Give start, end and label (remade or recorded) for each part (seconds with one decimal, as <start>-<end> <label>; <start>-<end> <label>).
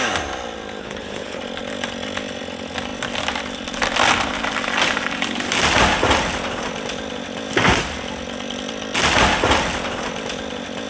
0.0-0.8 recorded; 0.8-1.4 remade; 1.4-10.9 recorded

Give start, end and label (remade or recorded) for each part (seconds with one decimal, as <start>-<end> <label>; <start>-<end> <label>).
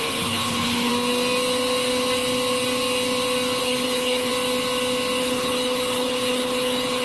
0.0-0.9 remade; 0.9-3.6 recorded; 3.6-4.3 remade; 4.3-5.2 recorded; 5.2-7.0 remade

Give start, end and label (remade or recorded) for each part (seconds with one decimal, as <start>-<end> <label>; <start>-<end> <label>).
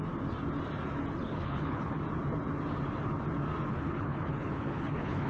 0.0-1.2 recorded; 1.2-2.0 remade; 2.0-3.7 recorded; 3.7-5.3 remade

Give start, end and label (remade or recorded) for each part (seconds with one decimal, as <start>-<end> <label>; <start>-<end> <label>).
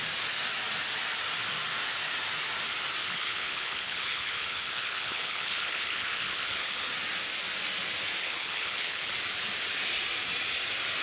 0.0-3.0 recorded; 3.0-6.9 remade; 6.9-8.2 recorded; 8.2-9.1 remade; 9.1-11.0 recorded